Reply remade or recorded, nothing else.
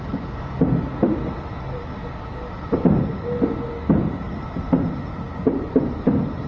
recorded